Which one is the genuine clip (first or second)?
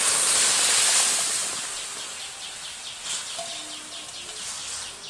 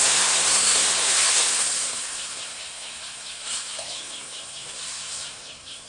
first